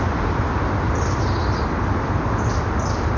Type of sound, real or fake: real